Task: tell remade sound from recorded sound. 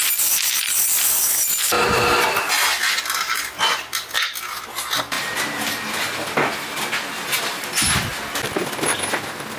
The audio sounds recorded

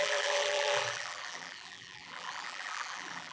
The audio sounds remade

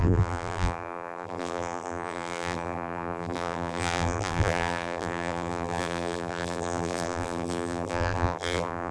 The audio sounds remade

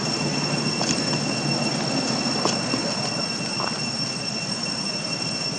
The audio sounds recorded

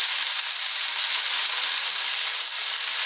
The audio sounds recorded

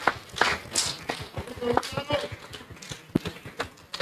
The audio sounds recorded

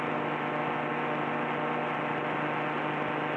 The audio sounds recorded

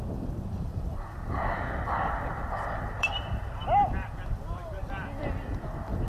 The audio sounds remade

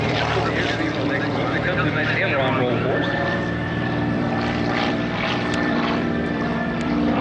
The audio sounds remade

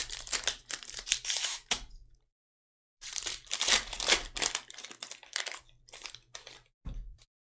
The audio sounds remade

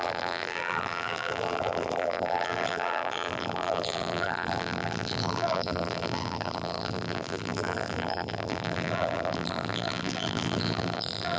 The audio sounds remade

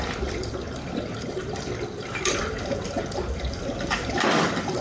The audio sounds remade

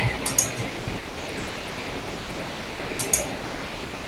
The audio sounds recorded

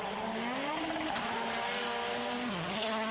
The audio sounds recorded